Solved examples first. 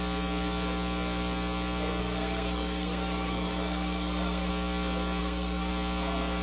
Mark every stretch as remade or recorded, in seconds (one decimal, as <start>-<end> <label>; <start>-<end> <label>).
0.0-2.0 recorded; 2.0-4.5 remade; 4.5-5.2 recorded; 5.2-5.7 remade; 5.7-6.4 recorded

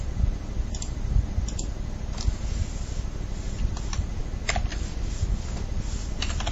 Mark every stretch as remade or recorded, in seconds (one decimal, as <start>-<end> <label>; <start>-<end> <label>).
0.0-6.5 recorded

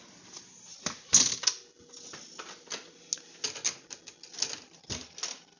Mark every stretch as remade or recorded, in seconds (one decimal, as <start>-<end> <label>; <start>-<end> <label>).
0.0-5.6 recorded

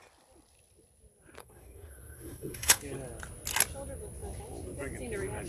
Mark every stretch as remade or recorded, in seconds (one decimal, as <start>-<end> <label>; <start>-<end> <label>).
0.0-1.4 recorded; 1.4-2.8 remade; 2.8-5.5 recorded